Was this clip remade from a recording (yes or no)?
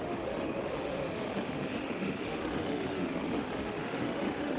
yes